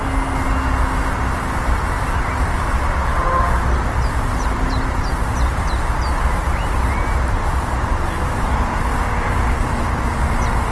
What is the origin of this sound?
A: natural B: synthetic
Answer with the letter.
A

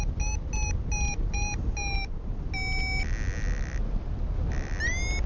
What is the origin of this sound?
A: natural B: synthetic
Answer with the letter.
A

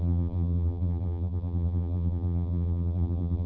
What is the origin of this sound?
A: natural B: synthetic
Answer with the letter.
B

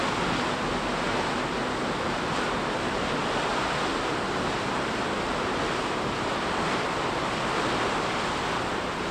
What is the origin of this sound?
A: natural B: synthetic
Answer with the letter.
A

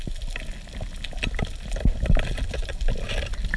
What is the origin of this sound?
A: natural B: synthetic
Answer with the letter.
A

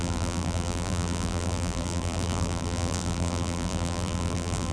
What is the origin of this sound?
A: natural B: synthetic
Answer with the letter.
B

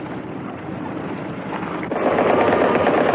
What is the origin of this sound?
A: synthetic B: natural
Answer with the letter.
B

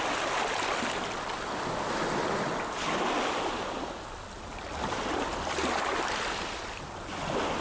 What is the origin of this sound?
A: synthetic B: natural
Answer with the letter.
B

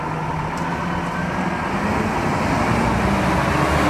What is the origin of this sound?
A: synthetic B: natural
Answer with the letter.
B